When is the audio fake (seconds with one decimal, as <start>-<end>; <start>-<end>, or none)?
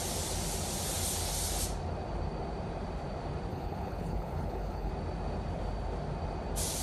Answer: 3.5-4.9